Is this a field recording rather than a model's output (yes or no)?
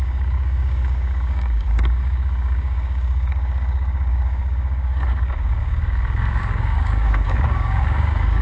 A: no